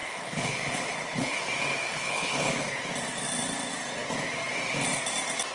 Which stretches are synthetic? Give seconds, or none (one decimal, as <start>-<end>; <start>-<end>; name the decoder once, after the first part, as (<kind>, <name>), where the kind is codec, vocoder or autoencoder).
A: 0.0-1.4 (codec, HILCodec); 1.8-2.8